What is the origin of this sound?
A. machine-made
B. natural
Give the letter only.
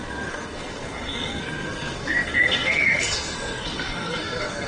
A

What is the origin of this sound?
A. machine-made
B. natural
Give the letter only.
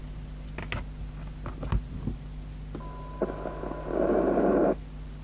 B